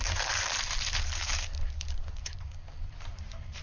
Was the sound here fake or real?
fake